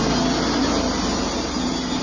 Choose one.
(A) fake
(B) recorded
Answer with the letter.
B